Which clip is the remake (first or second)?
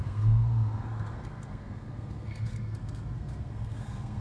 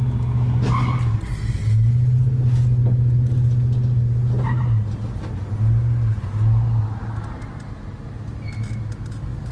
first